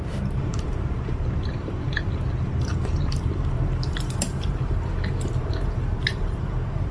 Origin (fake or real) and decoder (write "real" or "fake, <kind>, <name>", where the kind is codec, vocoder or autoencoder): fake, vocoder, BigVGAN v2